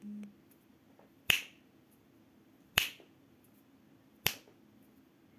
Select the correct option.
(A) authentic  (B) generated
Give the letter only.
A